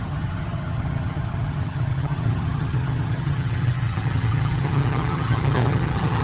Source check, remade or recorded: remade